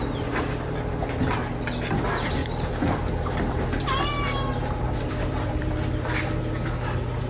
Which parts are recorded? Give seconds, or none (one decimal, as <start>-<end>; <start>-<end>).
0.0-2.4; 6.5-7.3